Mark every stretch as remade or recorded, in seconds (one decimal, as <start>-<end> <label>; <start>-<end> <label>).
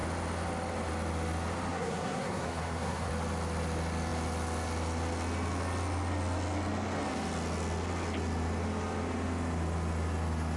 0.0-1.7 recorded; 1.7-3.1 remade; 3.1-10.6 recorded